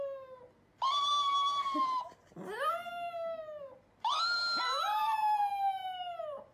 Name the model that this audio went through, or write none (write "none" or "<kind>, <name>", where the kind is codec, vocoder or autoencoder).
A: none